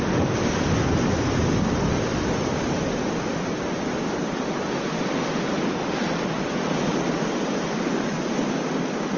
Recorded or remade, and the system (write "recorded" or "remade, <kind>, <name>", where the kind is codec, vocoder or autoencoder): recorded